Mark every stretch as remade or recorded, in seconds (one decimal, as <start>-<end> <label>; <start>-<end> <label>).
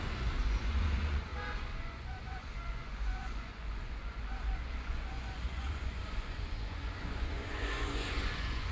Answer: 0.0-8.7 remade